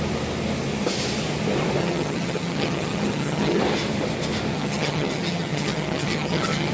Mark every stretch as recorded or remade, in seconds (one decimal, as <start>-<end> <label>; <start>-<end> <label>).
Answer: 0.0-1.8 recorded; 1.8-3.6 remade; 3.6-4.5 recorded; 4.5-6.7 remade